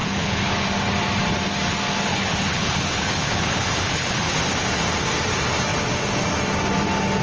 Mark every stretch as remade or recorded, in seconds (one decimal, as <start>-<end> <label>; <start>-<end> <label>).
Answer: 0.0-0.5 remade; 0.5-2.1 recorded; 2.1-4.4 remade; 4.4-7.2 recorded